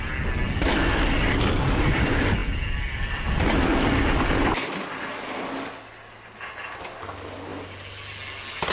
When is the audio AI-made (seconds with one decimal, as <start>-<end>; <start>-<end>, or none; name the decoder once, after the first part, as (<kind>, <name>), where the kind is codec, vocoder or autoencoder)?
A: none